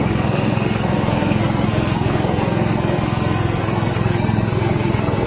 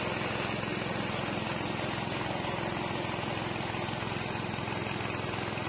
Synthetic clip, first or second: first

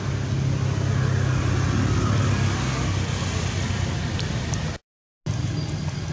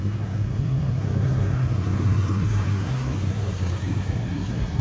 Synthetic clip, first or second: second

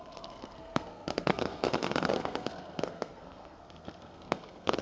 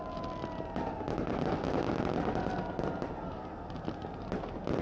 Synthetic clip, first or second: first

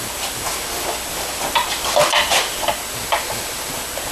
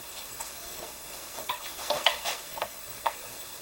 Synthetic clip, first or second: second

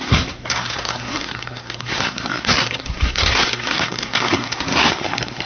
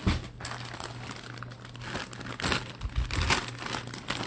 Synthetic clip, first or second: first